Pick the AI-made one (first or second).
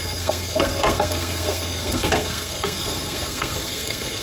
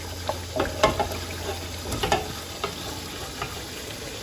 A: first